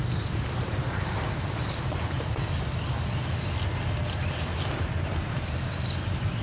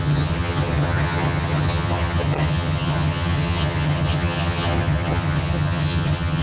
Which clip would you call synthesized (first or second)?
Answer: second